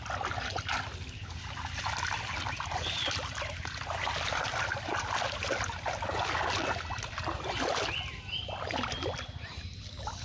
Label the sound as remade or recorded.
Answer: recorded